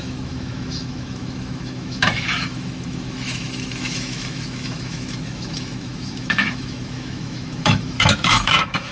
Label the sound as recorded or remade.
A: remade